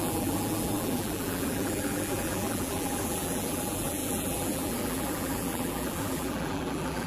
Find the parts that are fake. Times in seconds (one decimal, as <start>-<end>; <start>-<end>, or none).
0.0-7.1